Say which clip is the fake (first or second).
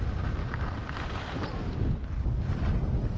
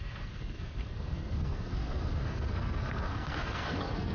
second